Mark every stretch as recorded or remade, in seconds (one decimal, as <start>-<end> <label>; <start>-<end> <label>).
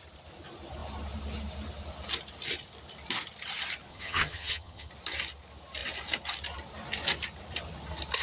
0.0-3.9 recorded; 3.9-4.9 remade; 4.9-8.2 recorded